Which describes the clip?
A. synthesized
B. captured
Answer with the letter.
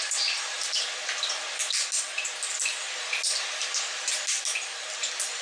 B